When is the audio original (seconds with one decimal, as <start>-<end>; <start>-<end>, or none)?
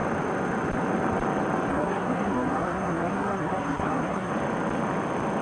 0.0-1.7; 4.3-5.4